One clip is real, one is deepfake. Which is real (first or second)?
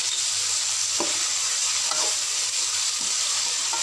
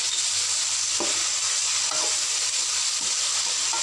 second